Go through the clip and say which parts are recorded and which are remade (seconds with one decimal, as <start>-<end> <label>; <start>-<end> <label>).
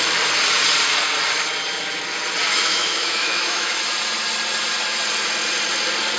0.0-2.5 recorded; 2.5-3.8 remade; 3.8-6.2 recorded